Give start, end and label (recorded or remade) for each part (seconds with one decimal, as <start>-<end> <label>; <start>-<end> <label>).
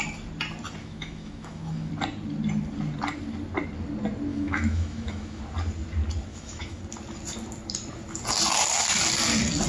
0.0-0.8 recorded; 0.8-1.9 remade; 1.9-4.3 recorded; 4.3-5.4 remade; 5.4-6.3 recorded; 6.3-6.8 remade; 6.8-9.7 recorded